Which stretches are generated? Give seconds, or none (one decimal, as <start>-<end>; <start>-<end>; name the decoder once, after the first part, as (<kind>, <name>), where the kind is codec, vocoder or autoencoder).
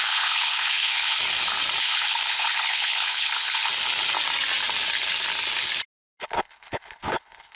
0.0-1.2 (codec, HILCodec); 1.8-3.7; 6.2-7.6